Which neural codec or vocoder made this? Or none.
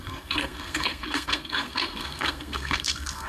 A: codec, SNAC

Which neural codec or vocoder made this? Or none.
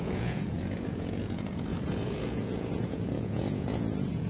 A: vocoder, Vocos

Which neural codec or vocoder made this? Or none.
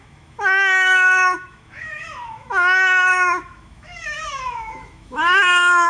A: autoencoder, DAC-VAE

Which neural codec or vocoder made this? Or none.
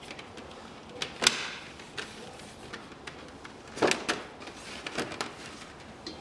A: none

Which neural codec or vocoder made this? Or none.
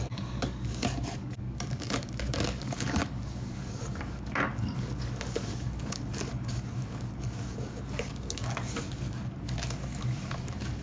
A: codec, DAC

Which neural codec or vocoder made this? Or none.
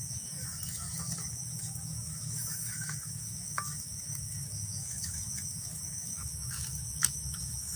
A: autoencoder, DAC-VAE